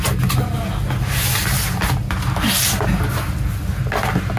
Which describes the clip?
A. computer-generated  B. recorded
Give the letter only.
B